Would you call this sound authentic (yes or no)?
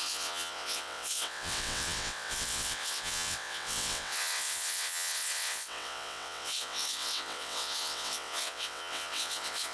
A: no